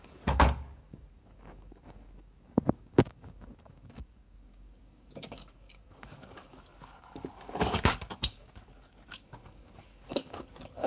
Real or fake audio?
fake